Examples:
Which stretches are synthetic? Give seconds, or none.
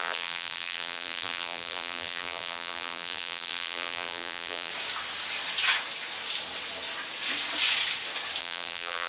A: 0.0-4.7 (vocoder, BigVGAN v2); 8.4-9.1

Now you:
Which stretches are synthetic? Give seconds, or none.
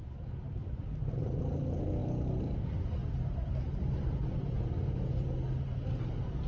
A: none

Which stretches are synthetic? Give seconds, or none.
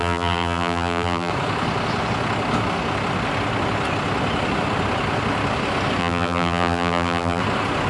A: 0.0-1.3 (vocoder, BigVGAN v2); 6.0-7.4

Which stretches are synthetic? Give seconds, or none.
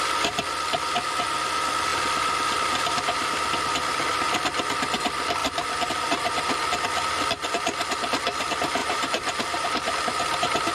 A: 8.8-9.9 (vocoder, BigVGAN v2)